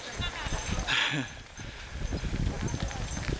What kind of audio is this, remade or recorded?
recorded